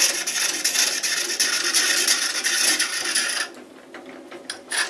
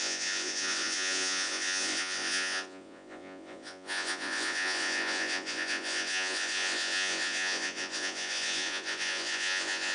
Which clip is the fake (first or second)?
second